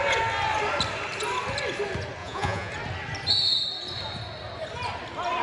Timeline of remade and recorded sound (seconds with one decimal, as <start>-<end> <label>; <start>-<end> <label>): 0.0-2.2 recorded; 2.2-2.7 remade; 2.7-5.4 recorded